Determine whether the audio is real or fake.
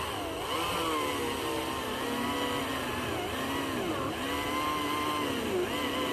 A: real